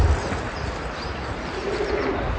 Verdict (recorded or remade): recorded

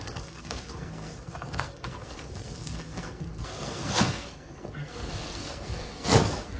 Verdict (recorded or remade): remade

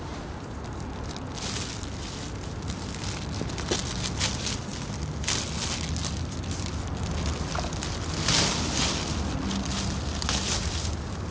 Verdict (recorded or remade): recorded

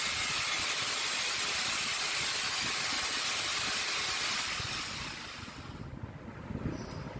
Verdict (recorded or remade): recorded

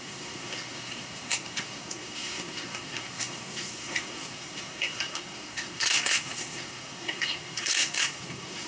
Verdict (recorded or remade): remade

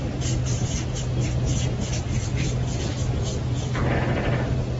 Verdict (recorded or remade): recorded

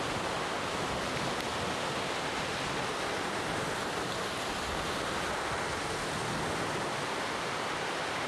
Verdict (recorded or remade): recorded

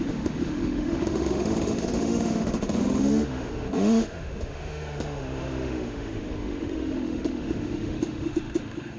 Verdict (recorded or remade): remade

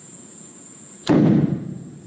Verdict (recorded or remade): remade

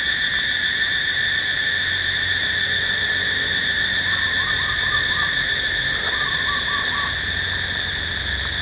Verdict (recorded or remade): recorded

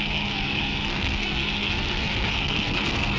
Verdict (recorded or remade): remade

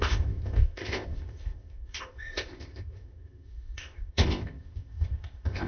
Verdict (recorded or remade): remade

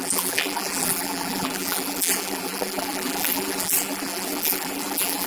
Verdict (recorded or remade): remade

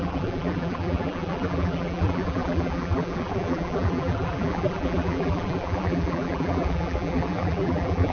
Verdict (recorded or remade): remade